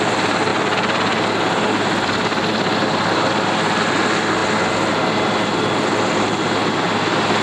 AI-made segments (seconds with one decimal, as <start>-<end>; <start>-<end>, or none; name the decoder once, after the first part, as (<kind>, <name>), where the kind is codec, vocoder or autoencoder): none